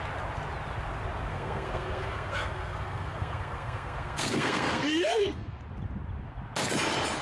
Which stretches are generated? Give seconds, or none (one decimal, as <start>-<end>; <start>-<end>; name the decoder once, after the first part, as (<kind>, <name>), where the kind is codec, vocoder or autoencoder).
1.3-5.6 (codec, SNAC)